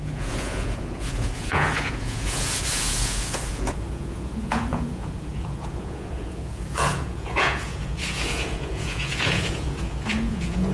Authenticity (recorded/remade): remade